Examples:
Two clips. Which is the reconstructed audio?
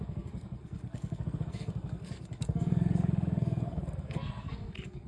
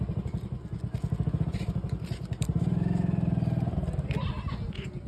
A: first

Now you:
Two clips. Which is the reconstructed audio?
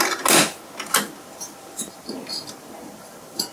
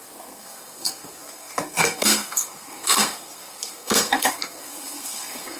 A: second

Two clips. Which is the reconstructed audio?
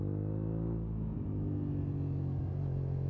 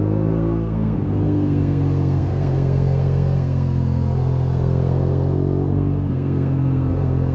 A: second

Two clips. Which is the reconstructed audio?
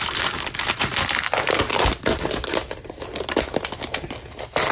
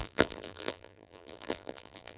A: second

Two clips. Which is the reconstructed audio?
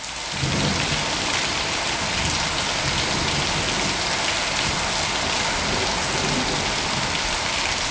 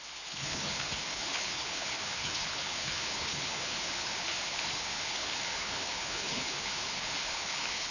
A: second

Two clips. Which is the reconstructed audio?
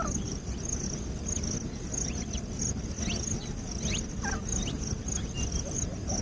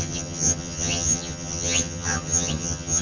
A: second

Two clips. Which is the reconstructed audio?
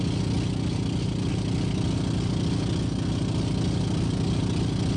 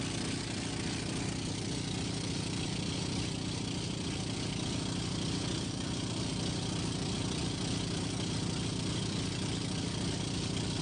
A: second